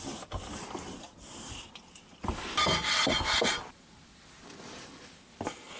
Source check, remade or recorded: recorded